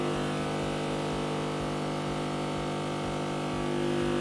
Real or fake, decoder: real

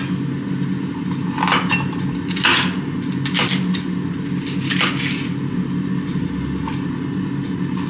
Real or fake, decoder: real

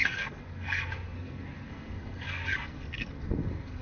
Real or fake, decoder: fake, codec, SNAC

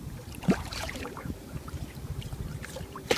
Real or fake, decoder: fake, vocoder, BigVGAN v2